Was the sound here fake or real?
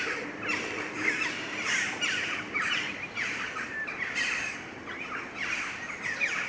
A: fake